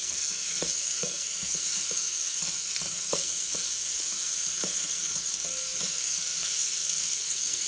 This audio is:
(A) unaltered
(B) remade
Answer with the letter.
B